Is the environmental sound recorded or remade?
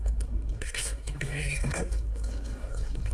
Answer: remade